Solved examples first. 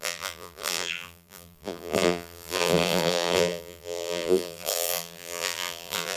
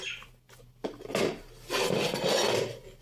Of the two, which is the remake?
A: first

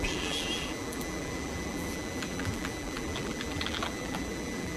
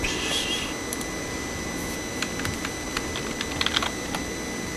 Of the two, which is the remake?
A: first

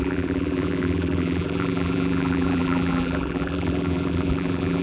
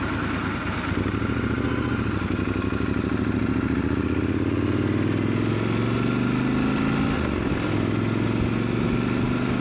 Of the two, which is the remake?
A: first